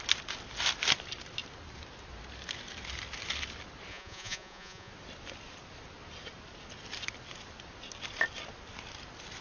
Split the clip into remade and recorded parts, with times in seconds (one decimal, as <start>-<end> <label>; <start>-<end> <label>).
0.0-3.9 recorded; 3.9-4.9 remade; 4.9-9.4 recorded